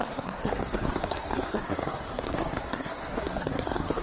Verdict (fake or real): fake